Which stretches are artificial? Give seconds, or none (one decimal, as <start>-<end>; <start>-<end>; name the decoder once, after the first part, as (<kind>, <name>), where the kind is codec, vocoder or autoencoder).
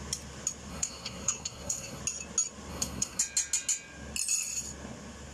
0.7-2.0 (codec, SNAC); 2.7-3.2